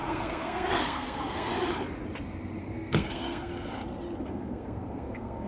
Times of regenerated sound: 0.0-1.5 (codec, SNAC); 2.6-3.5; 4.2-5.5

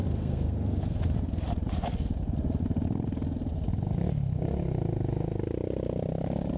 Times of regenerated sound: 0.0-1.0 (codec, SNAC)

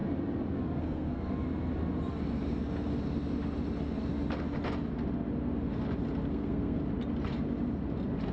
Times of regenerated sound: 0.8-1.3 (codec, SNAC); 6.3-6.8